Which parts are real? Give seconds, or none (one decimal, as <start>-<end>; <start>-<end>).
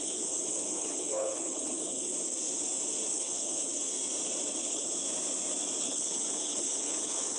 2.1-3.1; 3.7-4.6; 5.0-5.8